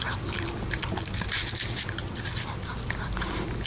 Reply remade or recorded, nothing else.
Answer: recorded